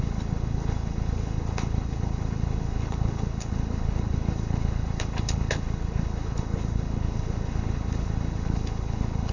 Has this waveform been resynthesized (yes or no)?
yes